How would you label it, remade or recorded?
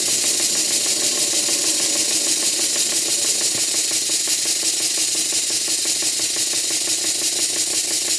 recorded